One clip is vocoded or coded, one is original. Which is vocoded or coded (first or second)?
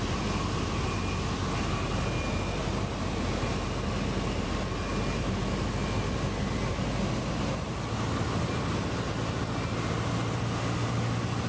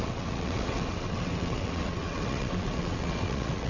second